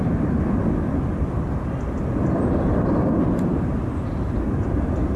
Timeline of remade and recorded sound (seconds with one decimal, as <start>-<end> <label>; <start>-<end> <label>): 0.0-5.2 recorded